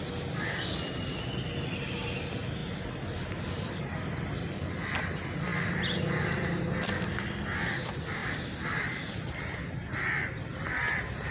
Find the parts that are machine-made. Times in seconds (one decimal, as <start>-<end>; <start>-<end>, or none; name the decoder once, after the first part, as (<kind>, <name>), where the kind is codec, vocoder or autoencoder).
5.5-7.1 (vocoder, BigVGAN v2); 8.2-9.4